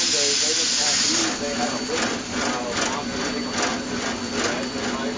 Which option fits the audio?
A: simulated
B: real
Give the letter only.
B